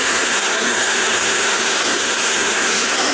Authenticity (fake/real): fake